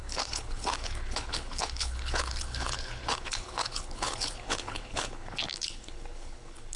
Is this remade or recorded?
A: remade